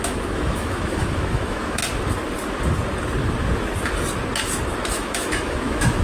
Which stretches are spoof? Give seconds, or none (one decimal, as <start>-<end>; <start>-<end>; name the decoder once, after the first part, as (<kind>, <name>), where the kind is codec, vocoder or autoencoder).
0.0-1.8 (autoencoder, DAC-VAE); 4.9-6.0

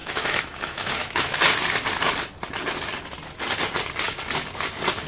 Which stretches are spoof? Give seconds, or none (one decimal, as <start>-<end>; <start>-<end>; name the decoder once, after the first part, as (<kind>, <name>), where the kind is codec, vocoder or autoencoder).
0.0-1.4 (autoencoder, DAC-VAE)

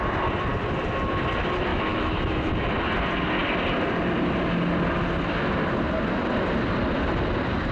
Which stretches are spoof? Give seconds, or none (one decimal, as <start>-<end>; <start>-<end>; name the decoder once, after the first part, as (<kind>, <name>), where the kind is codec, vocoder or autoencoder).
1.7-2.5 (autoencoder, DAC-VAE)